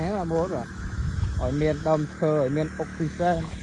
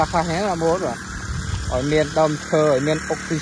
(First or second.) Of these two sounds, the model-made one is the first